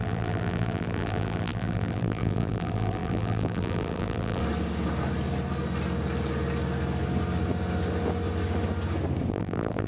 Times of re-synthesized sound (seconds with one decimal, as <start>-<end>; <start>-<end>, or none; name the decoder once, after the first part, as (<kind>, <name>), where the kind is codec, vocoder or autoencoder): 0.0-4.4 (vocoder, BigVGAN v2); 9.3-9.9